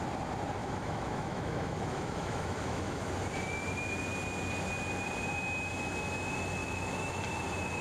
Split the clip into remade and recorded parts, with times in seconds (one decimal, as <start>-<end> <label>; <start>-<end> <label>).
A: 0.0-0.6 recorded; 0.6-3.1 remade; 3.1-6.6 recorded; 6.6-7.2 remade; 7.2-7.8 recorded